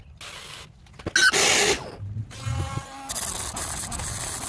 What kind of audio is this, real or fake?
real